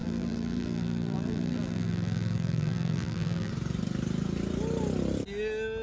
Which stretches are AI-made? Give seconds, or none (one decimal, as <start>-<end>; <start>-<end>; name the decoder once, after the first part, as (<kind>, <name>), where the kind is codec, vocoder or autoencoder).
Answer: 0.0-3.5 (vocoder, BigVGAN v2)